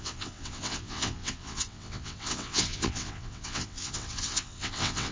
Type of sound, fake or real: fake